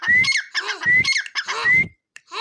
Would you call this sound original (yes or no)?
yes